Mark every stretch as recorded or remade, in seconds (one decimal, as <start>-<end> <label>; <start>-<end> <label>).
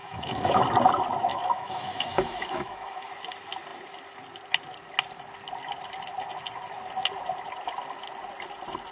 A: 0.0-0.6 remade; 0.6-1.3 recorded; 1.3-3.1 remade; 3.1-8.9 recorded